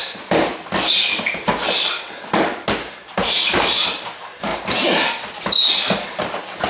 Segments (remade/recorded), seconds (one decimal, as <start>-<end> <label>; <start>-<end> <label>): 0.0-6.7 recorded